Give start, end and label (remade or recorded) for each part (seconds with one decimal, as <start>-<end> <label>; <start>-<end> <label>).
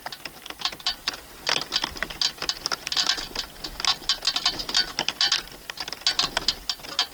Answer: 0.0-7.1 recorded